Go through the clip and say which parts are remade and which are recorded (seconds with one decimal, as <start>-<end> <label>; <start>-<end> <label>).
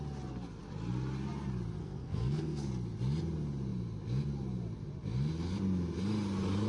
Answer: 0.0-1.8 recorded; 1.8-2.7 remade; 2.7-6.7 recorded